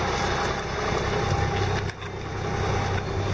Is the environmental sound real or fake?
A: real